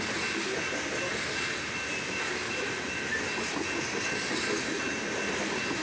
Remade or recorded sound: recorded